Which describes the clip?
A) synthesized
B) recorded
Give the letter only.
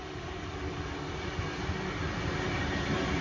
B